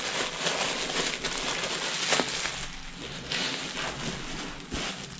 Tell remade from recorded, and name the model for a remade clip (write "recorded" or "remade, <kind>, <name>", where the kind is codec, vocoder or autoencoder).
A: recorded